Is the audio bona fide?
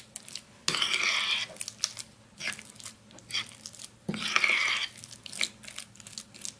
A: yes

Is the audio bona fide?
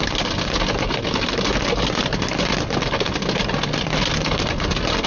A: yes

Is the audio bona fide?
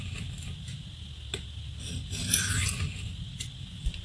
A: yes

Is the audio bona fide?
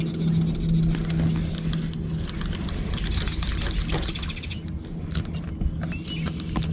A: yes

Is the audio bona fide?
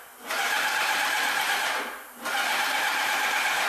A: yes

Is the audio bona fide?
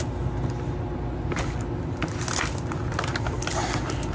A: yes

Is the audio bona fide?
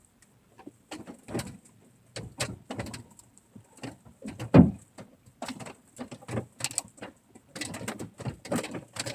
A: yes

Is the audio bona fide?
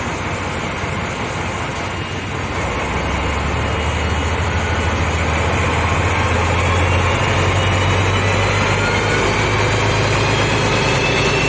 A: yes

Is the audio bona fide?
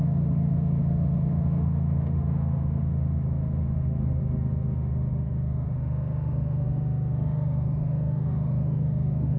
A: no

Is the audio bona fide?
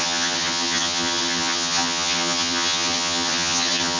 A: no